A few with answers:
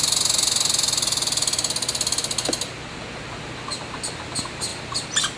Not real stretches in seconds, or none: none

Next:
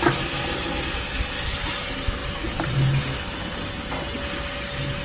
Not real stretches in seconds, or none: none

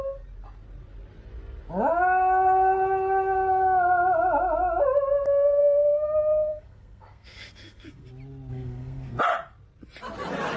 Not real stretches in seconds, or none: 5.6-8.1 (codec, SNAC); 8.5-9.2

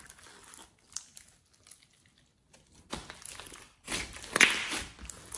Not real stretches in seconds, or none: none

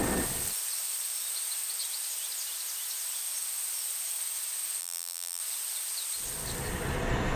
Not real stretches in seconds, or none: 4.8-5.4 (vocoder, BigVGAN v2)

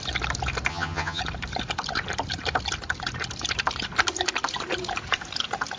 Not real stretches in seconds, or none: 0.7-1.2 (vocoder, HiFi-GAN)